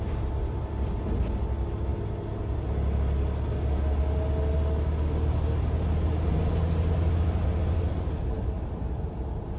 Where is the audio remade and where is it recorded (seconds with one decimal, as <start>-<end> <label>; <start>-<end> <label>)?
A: 0.0-9.6 recorded